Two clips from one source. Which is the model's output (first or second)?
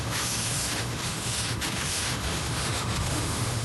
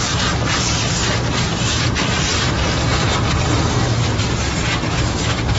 first